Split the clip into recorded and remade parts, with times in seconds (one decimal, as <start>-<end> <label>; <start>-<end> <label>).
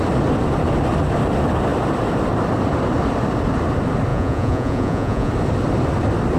0.0-4.1 recorded; 4.1-5.3 remade; 5.3-6.4 recorded